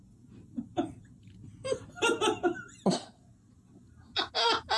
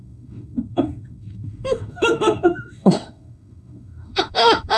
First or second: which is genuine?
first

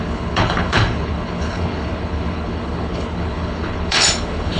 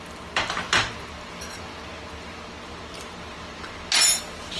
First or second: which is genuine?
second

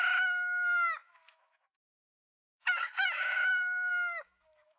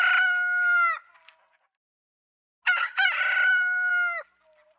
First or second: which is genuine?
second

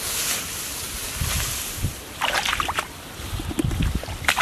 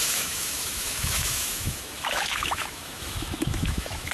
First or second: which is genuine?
first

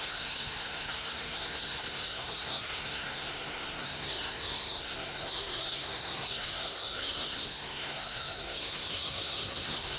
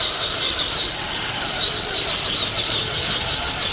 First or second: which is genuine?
second